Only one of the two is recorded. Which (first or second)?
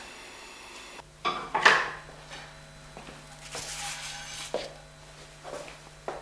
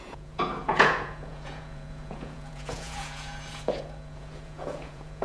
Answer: first